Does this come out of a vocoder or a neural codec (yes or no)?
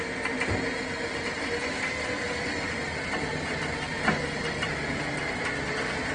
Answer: no